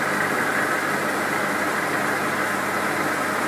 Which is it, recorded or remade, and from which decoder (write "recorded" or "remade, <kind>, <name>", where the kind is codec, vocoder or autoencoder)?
recorded